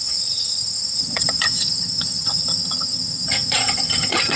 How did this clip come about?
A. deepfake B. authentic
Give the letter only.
A